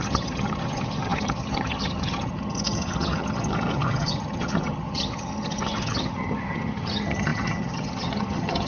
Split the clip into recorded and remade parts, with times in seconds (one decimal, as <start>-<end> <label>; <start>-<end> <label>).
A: 0.0-8.7 remade